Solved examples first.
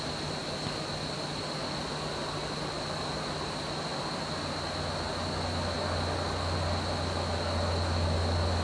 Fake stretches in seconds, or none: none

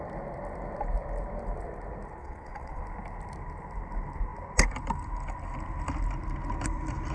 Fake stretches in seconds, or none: 2.2-2.8 (vocoder, WaveNeXt)

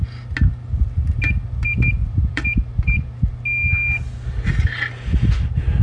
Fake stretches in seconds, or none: 2.0-3.3 (vocoder, BigVGAN v2)

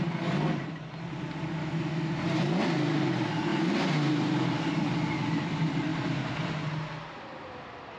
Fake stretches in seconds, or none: 1.6-2.1 (autoencoder, DAC-VAE)

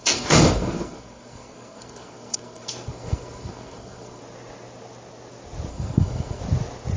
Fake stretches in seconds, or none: 0.0-4.2 (codec, SNAC); 5.7-6.4